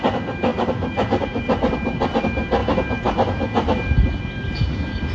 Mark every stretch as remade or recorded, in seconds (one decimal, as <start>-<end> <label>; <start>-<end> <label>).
0.0-0.5 recorded; 0.5-1.4 remade; 1.4-5.1 recorded